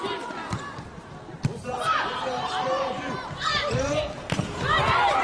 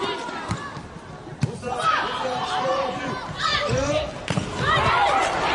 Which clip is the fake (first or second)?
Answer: second